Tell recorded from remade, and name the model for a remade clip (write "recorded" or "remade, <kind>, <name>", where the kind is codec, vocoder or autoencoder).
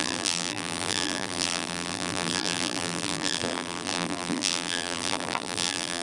remade, vocoder, BigVGAN v2